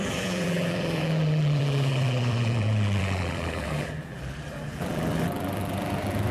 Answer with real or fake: fake